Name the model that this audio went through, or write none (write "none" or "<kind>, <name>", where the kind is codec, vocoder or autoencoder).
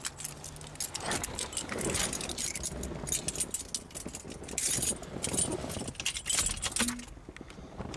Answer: none